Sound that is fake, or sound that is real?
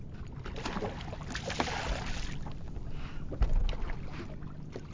real